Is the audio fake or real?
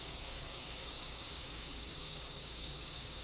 fake